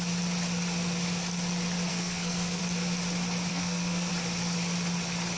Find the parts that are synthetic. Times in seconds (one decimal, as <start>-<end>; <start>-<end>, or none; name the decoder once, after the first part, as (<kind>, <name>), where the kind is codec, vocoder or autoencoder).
1.9-2.6 (codec, SNAC); 3.5-4.1